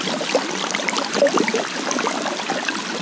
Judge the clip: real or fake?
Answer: real